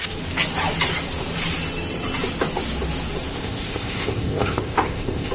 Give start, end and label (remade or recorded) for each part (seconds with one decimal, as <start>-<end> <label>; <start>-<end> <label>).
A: 0.0-3.3 recorded; 3.3-5.3 remade